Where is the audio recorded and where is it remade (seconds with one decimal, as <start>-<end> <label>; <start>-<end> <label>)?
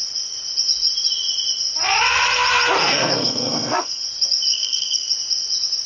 0.0-2.8 recorded; 2.8-4.0 remade; 4.0-4.5 recorded; 4.5-5.1 remade; 5.1-5.9 recorded